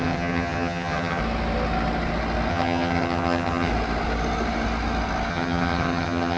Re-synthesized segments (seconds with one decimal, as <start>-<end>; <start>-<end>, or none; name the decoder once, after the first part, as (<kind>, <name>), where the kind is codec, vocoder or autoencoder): 0.0-1.2 (vocoder, HiFi-GAN); 2.5-3.7; 5.3-6.4

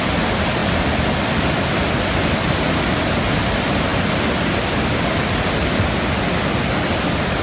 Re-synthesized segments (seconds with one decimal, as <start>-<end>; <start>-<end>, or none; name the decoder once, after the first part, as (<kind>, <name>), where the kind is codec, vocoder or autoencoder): none

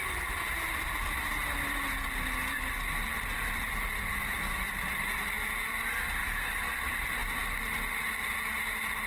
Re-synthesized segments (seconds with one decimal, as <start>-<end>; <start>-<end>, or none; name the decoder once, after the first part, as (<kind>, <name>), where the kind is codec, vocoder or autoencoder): 4.1-4.7 (autoencoder, DAC-VAE); 6.2-6.7

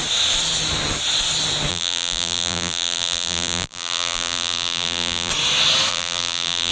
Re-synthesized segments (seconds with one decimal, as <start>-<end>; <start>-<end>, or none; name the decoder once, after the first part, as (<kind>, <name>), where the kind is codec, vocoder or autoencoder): 1.7-5.3 (vocoder, BigVGAN v2); 5.9-6.7

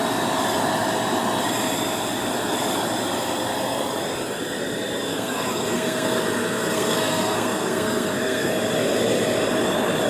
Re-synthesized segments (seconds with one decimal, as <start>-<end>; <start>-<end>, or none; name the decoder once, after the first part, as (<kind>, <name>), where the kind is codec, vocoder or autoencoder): 5.1-8.5 (codec, SNAC)

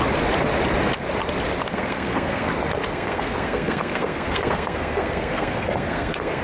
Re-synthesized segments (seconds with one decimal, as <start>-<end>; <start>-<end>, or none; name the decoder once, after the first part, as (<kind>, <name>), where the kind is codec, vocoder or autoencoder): 1.7-2.5 (codec, SNAC); 2.9-6.4